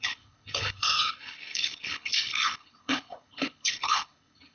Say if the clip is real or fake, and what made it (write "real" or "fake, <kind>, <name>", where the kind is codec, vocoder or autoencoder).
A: fake, codec, HILCodec